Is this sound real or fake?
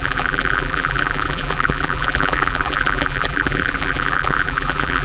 fake